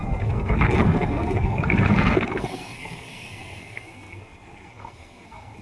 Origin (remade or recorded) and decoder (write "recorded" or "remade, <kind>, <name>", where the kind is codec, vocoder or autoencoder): remade, codec, SNAC